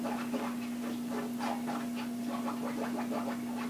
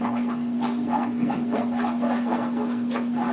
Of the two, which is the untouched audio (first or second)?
first